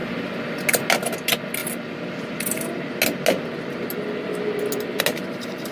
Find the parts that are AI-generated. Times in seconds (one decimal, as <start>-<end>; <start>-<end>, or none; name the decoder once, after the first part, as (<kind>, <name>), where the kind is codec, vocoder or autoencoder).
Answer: none